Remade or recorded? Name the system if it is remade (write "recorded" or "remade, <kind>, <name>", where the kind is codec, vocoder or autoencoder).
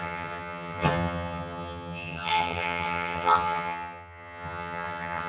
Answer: remade, vocoder, HiFi-GAN